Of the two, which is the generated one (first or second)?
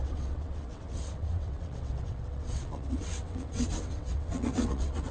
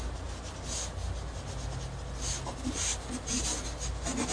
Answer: first